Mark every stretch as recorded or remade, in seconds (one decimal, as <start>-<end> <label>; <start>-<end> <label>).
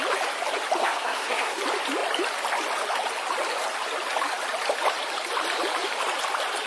0.0-0.8 recorded; 0.8-1.6 remade; 1.6-6.7 recorded